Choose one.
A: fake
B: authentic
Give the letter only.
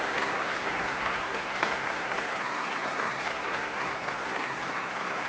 A